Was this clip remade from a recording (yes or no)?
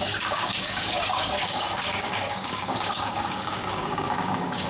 yes